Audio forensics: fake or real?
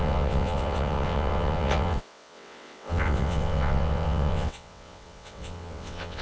fake